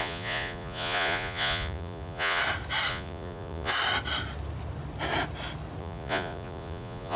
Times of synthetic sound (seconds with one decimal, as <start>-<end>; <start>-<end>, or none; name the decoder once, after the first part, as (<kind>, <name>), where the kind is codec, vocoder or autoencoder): 0.0-2.4 (vocoder, Vocos); 2.9-3.7; 5.8-7.2